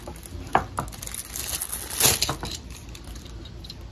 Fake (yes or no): no